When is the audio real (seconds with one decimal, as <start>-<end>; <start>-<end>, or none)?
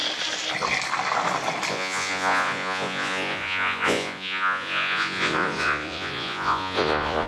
0.0-1.7